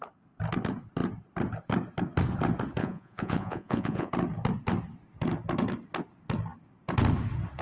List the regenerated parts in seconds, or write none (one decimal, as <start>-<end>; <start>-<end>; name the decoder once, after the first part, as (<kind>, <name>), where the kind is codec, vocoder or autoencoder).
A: 2.8-4.1 (vocoder, Vocos)